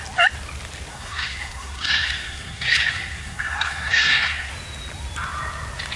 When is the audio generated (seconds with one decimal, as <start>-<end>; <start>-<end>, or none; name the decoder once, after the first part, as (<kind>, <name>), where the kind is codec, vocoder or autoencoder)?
0.9-4.5 (codec, SNAC)